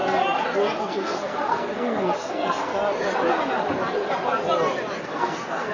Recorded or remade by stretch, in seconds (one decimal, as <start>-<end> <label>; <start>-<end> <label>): 0.0-0.8 recorded; 0.8-2.7 remade; 2.7-5.0 recorded; 5.0-5.7 remade

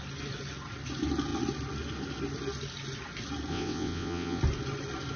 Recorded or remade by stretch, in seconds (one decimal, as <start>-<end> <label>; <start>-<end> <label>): 0.0-3.5 recorded; 3.5-4.4 remade; 4.4-5.2 recorded

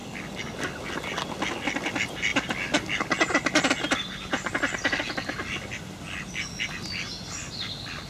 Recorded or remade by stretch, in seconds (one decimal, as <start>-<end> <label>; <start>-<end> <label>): 0.0-8.1 recorded

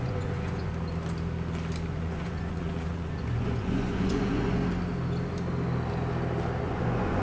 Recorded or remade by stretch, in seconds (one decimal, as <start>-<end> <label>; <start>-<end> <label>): 0.0-0.7 remade; 0.7-1.9 recorded; 1.9-4.6 remade; 4.6-6.6 recorded; 6.6-7.2 remade

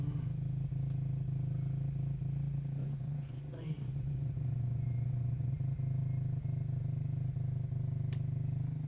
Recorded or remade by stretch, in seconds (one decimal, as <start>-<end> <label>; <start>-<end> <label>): 0.0-2.8 recorded; 2.8-5.5 remade; 5.5-8.9 recorded

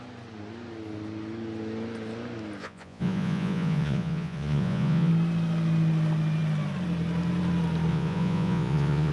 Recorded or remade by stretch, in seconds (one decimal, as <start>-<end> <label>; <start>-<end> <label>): 0.0-2.6 recorded; 2.6-5.1 remade; 5.1-7.9 recorded; 7.9-9.1 remade

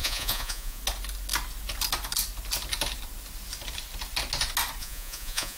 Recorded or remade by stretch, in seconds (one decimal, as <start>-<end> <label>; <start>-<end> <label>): 0.0-0.8 remade; 0.8-4.8 recorded; 4.8-5.6 remade

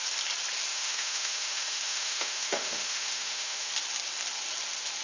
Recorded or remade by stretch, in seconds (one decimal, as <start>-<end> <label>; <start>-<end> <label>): 0.0-0.7 recorded; 0.7-3.7 remade; 3.7-5.0 recorded